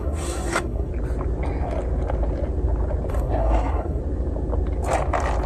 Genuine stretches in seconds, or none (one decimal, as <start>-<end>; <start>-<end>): 0.9-3.1; 4.0-5.5